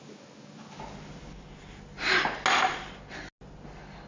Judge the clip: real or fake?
real